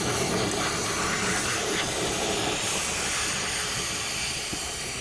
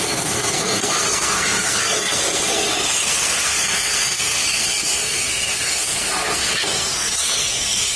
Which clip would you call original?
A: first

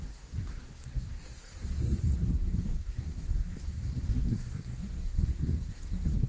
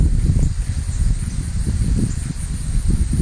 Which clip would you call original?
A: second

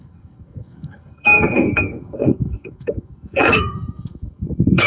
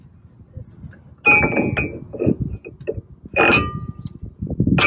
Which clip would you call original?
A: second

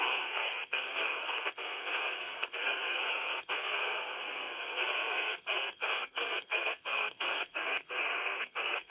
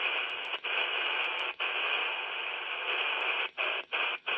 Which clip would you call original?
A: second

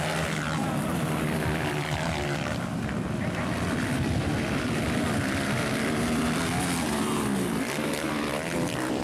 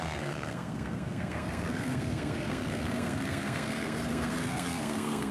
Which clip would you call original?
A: first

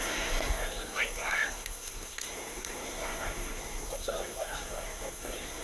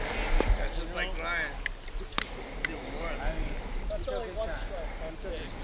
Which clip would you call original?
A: second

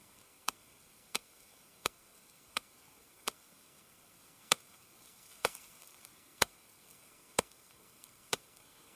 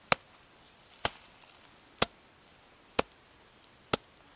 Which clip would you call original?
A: second